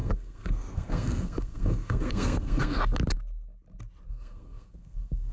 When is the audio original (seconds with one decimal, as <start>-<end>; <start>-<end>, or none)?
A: 2.8-4.1